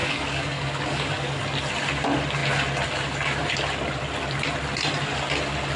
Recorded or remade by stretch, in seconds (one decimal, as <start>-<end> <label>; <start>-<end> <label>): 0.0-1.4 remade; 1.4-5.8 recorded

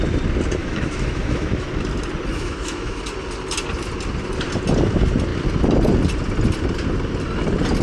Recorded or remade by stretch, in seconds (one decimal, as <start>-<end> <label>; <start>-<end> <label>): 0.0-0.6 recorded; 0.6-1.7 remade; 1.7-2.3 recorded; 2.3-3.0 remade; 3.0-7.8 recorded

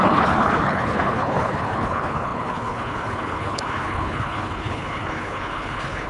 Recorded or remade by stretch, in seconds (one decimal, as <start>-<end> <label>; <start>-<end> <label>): 0.0-6.1 remade

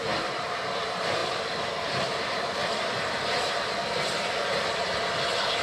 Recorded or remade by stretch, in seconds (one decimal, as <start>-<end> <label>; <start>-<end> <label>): 0.0-3.8 remade; 3.8-5.6 recorded

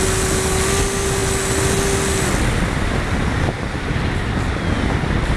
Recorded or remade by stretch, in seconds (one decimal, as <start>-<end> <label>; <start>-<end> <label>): 0.0-5.4 recorded